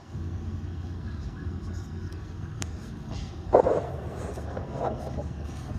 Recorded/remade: remade